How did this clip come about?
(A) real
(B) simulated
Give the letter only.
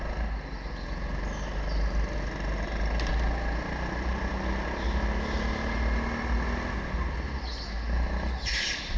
A